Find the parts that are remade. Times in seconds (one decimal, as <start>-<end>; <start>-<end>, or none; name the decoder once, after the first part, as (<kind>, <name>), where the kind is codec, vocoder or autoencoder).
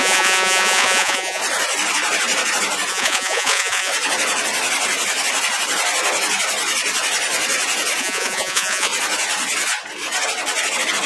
0.0-1.4 (vocoder, Vocos); 2.9-3.9; 8.0-8.9